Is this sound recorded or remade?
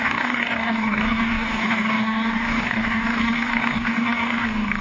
remade